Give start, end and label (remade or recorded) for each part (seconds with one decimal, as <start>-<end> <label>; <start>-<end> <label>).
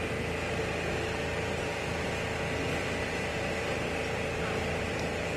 0.0-1.7 recorded; 1.7-2.4 remade; 2.4-3.3 recorded; 3.3-4.4 remade; 4.4-5.4 recorded